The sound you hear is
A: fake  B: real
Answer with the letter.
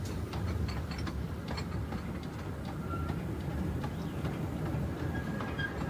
B